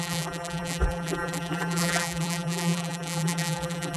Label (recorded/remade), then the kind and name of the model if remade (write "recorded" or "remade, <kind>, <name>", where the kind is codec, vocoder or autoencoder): remade, vocoder, BigVGAN v2